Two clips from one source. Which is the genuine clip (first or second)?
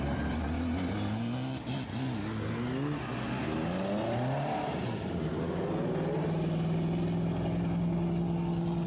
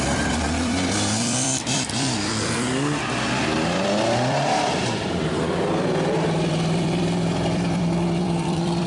first